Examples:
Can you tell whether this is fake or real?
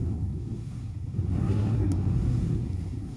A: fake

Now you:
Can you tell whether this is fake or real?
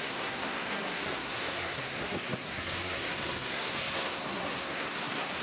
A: fake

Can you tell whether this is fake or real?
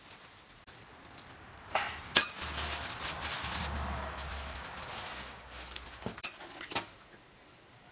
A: real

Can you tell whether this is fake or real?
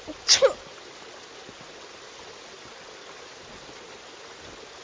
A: real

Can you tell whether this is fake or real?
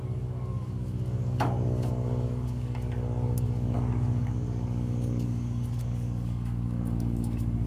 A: fake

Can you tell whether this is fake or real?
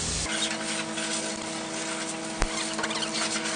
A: real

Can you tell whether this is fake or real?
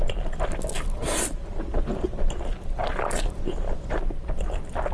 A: real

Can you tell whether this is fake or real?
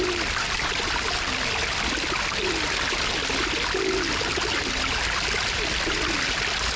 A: real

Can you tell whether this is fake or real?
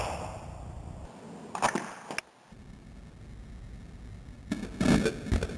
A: real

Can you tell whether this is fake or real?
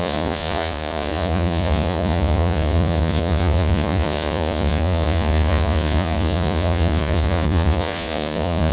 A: fake